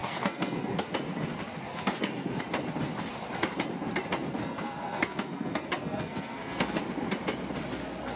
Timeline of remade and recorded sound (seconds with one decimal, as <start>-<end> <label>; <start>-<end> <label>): 0.0-0.9 remade; 0.9-1.7 recorded; 1.7-2.4 remade; 2.4-4.4 recorded; 4.4-6.8 remade; 6.8-8.2 recorded